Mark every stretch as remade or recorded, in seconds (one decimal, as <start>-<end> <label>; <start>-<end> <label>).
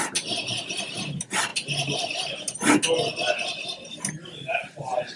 0.0-5.2 recorded